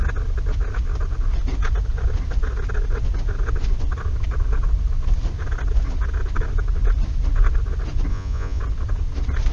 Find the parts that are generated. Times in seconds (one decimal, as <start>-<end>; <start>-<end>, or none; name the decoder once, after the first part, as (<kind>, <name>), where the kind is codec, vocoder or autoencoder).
8.1-8.6 (vocoder, Vocos)